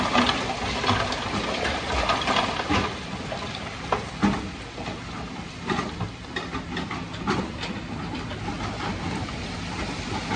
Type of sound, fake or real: real